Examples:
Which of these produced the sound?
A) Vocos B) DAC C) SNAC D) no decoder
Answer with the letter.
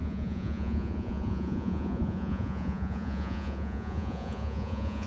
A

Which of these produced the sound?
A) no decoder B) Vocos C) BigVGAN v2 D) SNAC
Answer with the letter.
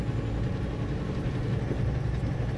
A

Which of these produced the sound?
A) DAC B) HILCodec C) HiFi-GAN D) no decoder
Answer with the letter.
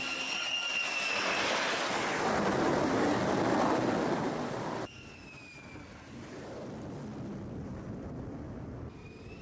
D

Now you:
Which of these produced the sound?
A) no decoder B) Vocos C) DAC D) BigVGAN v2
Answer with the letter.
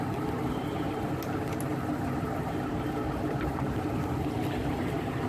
A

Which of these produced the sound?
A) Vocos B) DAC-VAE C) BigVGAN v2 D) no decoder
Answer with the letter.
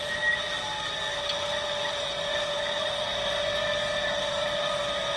D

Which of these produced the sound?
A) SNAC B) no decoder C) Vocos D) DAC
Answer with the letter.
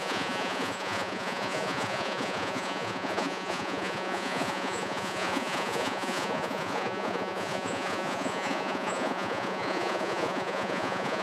C